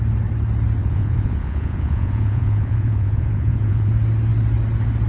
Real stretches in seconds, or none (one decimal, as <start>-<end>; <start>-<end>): 0.0-0.8; 3.9-5.1